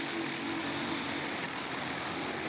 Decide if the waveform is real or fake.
real